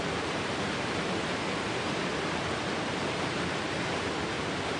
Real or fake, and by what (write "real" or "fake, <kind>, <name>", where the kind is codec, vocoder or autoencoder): real